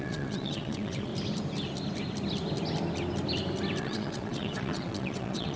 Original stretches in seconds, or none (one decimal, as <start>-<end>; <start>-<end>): 1.1-3.8